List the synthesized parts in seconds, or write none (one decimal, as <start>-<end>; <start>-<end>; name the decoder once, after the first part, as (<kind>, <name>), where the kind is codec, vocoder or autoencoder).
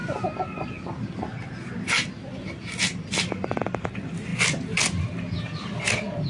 none